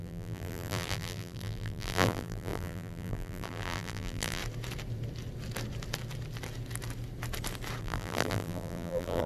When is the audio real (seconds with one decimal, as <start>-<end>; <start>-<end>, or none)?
4.4-7.8